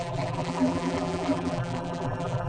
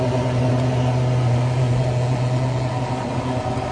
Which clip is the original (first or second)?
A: second